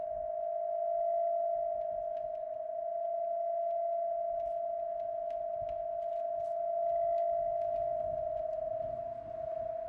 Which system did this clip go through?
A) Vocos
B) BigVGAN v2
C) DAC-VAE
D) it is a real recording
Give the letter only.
D